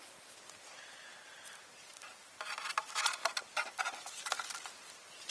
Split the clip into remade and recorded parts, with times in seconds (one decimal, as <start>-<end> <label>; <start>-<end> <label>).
0.0-5.3 recorded